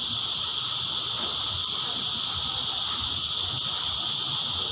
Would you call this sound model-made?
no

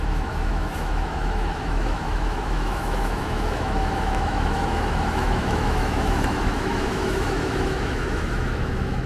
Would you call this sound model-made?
yes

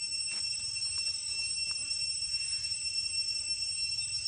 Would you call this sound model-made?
no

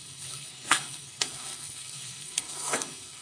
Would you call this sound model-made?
yes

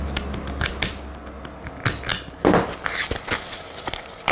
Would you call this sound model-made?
no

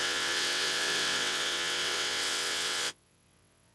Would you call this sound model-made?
yes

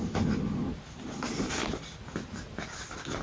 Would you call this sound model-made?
no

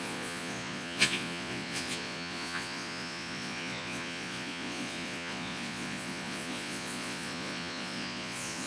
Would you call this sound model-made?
yes